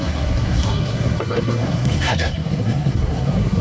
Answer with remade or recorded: remade